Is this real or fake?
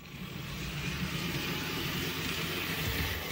fake